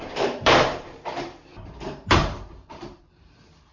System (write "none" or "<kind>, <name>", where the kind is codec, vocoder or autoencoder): vocoder, BigVGAN v2